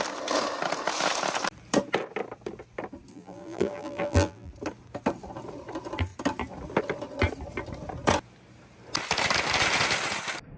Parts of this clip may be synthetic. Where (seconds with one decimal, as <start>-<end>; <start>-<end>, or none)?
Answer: 3.1-4.5